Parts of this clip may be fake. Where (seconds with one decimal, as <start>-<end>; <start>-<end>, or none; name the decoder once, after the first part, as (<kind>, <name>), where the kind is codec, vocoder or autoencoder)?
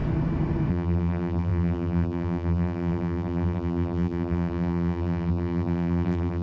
0.7-6.4 (vocoder, BigVGAN v2)